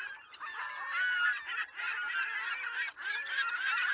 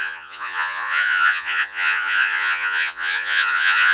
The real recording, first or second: first